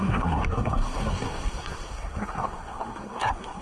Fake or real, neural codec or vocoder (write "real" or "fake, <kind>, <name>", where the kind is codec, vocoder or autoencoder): fake, codec, SNAC